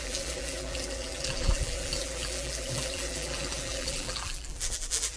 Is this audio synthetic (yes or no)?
yes